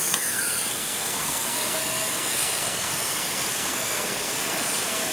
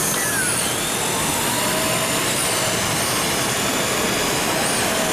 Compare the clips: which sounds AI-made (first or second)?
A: first